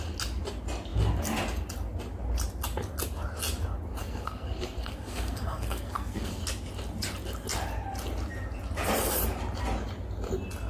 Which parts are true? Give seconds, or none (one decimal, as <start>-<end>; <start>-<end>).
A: 0.0-4.0; 6.4-10.7